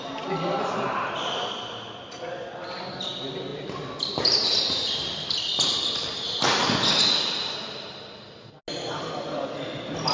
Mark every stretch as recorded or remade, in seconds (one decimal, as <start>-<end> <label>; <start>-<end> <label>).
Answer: 0.0-10.1 recorded